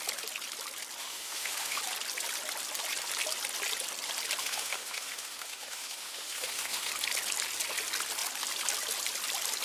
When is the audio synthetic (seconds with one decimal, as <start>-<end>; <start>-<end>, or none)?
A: 1.0-1.8; 4.4-6.9